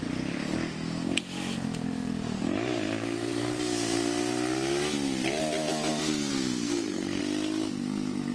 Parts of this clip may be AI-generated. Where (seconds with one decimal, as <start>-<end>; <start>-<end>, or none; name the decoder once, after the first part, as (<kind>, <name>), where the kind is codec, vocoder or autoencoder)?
6.3-7.2 (codec, SNAC)